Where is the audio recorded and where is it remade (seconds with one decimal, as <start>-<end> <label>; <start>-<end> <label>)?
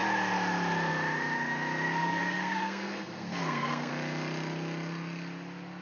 0.0-2.0 recorded; 2.0-3.9 remade; 3.9-5.8 recorded